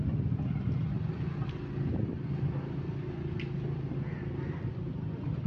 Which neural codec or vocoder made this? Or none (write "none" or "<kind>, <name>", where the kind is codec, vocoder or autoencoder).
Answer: none